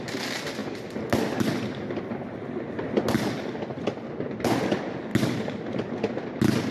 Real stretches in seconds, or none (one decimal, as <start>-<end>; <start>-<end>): 0.0-6.7